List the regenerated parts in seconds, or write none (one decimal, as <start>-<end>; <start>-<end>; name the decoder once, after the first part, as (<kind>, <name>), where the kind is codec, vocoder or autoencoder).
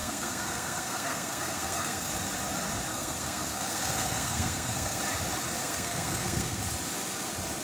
0.0-2.1 (codec, SNAC); 2.9-5.0; 5.6-6.6